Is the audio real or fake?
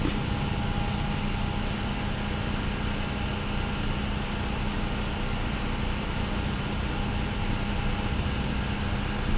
real